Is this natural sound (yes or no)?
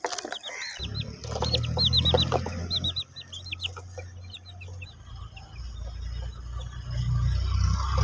yes